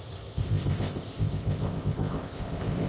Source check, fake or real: fake